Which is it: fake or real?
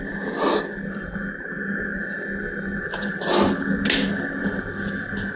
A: real